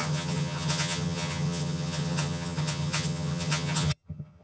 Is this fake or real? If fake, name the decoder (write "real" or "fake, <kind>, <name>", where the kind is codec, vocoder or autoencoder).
fake, vocoder, HiFi-GAN